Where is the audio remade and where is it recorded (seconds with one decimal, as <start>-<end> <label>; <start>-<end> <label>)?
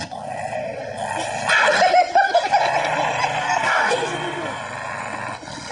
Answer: 0.0-3.4 recorded; 3.4-4.6 remade; 4.6-5.7 recorded